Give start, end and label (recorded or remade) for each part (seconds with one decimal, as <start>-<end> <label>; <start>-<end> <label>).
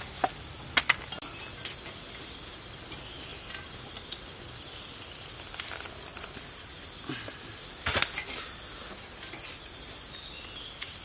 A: 0.0-11.0 recorded